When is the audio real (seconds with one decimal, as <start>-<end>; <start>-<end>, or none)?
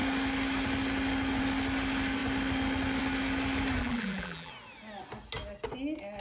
0.0-3.8; 4.5-6.2